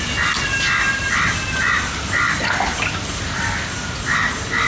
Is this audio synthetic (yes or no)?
no